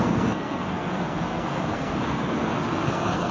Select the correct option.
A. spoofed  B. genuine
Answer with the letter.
A